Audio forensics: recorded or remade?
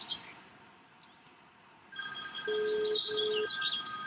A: recorded